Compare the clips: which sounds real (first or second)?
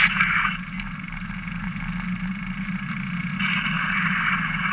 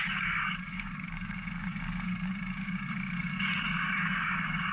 first